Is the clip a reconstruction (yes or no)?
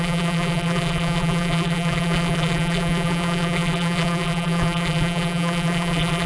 yes